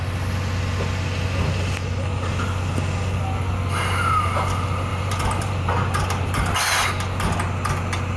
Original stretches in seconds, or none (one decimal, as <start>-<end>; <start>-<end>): 0.0-4.9; 5.7-8.2